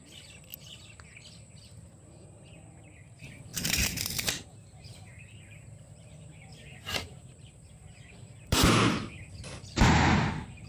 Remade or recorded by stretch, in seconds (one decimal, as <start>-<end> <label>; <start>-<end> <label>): 0.0-3.5 recorded; 3.5-8.6 remade; 8.6-10.7 recorded